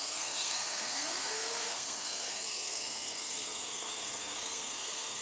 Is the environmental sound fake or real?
fake